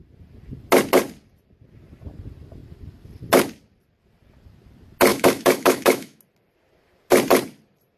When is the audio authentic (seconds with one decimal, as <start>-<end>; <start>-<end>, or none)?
0.0-5.1; 6.2-8.0